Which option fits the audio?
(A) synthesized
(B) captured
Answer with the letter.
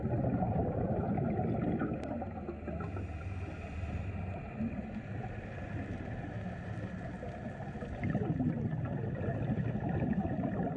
B